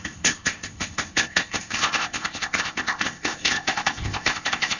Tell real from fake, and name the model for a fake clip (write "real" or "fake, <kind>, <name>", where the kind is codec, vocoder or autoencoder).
fake, codec, ZipCodec